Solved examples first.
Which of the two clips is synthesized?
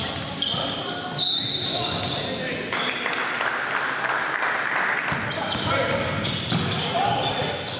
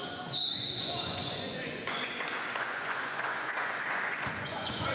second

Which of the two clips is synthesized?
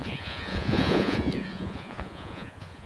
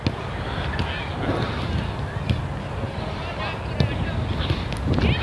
first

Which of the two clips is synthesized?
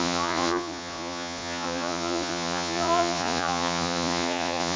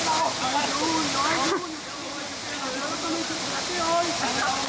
first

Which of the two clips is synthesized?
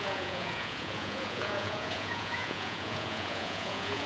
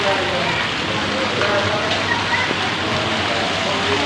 first